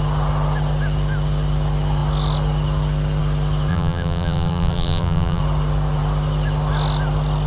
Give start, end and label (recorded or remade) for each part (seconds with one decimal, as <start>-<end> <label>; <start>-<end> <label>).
0.0-3.7 recorded; 3.7-5.4 remade; 5.4-7.5 recorded